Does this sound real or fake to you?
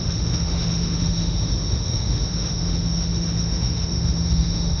fake